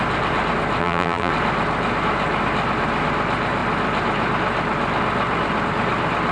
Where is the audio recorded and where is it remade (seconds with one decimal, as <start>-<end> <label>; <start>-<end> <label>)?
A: 0.0-0.8 recorded; 0.8-1.3 remade; 1.3-6.3 recorded